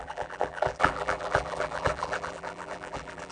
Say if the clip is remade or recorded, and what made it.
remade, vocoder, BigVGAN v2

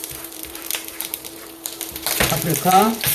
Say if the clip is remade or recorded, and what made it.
remade, vocoder, BigVGAN v2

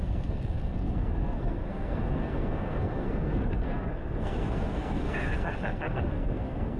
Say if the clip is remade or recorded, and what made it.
remade, codec, SNAC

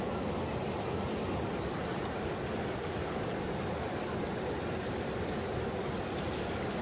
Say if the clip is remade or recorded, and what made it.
recorded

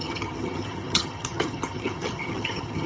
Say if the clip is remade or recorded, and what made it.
remade, vocoder, HiFi-GAN